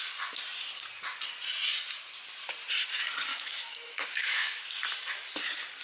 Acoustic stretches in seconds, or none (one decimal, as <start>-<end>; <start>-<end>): 0.0-3.3; 4.7-5.8